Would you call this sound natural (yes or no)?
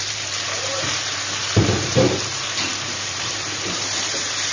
no